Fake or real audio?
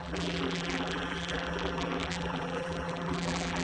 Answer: fake